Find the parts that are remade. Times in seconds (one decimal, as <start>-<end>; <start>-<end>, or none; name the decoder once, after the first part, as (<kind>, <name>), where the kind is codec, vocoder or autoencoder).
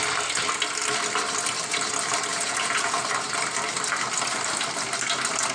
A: 2.3-3.0 (vocoder, Vocos)